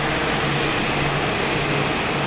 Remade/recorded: recorded